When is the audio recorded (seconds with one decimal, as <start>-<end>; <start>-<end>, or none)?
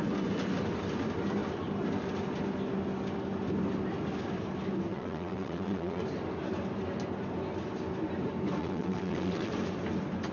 0.0-4.9; 6.0-8.6; 9.5-10.3